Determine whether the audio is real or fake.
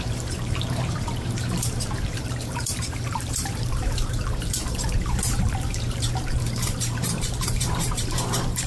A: fake